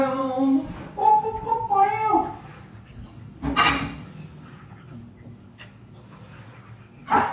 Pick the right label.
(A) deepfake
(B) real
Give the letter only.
B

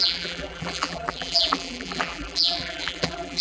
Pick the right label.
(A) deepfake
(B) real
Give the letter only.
A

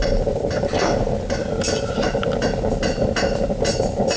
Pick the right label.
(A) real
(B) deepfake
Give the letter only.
A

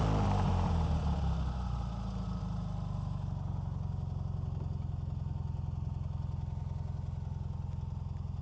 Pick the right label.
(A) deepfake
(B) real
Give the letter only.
B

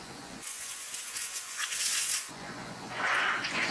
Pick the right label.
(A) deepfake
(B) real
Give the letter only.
A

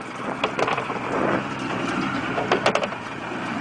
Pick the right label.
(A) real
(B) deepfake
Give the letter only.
B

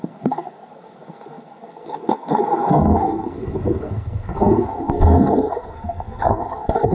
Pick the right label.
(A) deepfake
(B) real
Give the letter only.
A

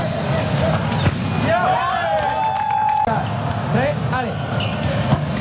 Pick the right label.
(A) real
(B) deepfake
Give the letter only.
A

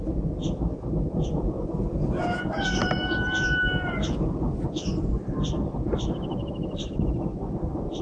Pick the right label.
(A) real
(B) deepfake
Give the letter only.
A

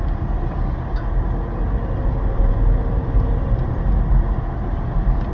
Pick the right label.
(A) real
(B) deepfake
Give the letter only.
A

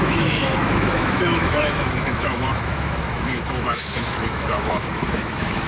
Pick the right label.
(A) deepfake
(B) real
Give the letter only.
A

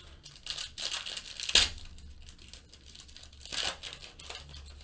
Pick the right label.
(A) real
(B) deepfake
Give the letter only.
A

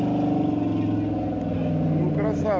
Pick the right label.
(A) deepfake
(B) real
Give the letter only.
B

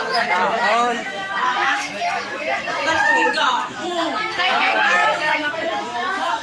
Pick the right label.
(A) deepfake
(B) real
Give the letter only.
A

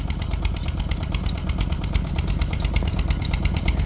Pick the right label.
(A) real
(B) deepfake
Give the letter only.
A